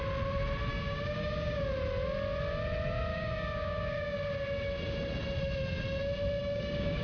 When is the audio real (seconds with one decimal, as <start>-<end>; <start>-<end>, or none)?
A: 0.0-0.7; 1.6-3.1; 4.3-6.4